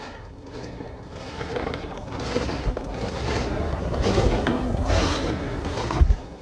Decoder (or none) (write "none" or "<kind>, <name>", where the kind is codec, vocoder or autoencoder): codec, SNAC